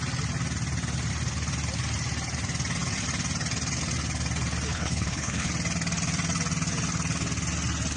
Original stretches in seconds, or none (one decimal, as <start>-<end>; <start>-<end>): 0.0-4.7; 5.5-8.0